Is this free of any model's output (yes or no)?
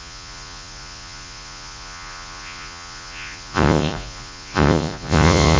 no